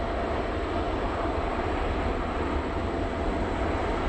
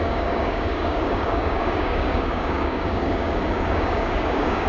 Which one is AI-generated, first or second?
second